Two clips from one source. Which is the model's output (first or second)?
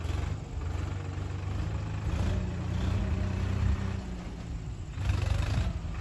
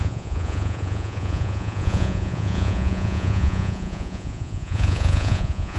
second